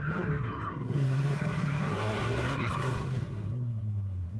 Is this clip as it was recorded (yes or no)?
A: no